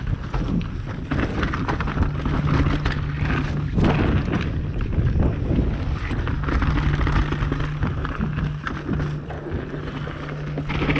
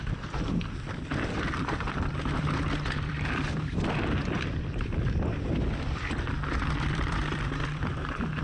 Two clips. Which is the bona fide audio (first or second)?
first